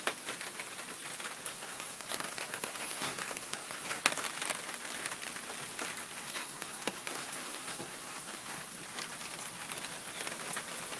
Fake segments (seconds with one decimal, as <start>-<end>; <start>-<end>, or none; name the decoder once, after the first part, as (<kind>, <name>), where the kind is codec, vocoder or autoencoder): 1.5-4.0 (codec, SNAC); 6.2-8.8